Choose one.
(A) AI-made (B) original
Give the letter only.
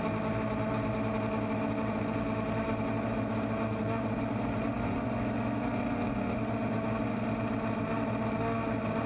B